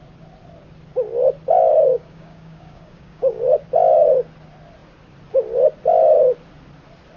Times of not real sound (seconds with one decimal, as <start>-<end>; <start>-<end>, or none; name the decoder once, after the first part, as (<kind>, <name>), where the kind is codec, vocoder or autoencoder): 1.7-3.4 (codec, DAC)